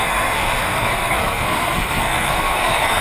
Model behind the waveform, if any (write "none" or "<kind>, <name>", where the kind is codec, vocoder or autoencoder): codec, SNAC